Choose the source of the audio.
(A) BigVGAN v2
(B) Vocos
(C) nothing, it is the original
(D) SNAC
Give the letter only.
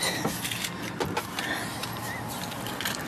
C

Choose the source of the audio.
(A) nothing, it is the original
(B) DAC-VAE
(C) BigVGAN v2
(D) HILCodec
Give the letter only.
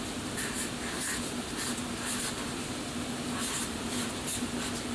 A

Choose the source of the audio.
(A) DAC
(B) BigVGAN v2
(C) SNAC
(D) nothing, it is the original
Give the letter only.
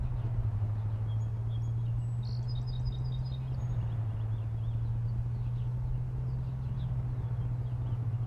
D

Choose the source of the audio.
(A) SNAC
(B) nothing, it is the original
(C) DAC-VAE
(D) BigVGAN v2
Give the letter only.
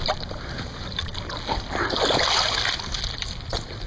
B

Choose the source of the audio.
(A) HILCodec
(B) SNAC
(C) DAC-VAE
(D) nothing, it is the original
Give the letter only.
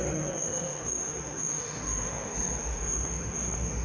C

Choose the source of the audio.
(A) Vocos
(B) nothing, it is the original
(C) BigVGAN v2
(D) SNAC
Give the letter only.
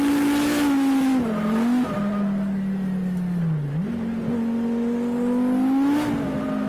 B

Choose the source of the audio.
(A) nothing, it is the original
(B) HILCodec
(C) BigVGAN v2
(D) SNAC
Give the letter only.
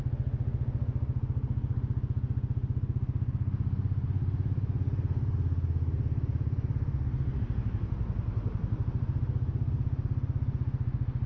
A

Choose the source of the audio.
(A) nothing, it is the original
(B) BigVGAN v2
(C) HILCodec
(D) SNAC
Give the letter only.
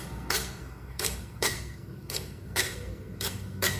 D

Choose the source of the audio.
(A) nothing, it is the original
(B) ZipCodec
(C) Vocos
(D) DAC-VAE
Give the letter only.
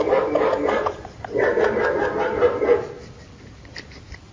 A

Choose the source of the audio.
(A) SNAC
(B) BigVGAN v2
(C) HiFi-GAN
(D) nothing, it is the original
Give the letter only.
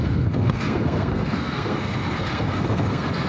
A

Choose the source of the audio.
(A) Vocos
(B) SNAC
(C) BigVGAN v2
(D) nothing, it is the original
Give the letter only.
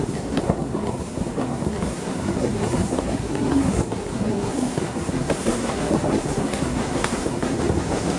B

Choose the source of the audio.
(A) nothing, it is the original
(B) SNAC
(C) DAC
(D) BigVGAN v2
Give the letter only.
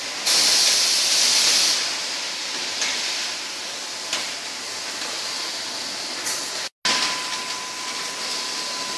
A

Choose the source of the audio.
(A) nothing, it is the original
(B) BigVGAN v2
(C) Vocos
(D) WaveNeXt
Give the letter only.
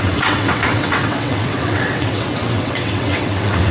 D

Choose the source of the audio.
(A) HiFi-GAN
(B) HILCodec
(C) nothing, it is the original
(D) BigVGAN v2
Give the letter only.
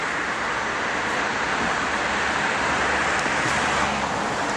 D